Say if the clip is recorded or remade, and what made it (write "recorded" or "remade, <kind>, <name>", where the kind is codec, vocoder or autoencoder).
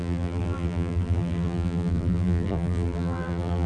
remade, vocoder, BigVGAN v2